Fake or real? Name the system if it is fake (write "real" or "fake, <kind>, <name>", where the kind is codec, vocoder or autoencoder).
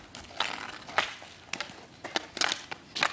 real